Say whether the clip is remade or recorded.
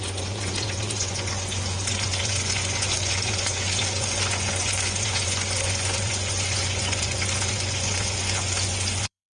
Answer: remade